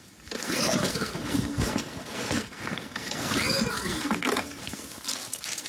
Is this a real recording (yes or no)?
no